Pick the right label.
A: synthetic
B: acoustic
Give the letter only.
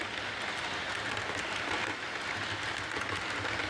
B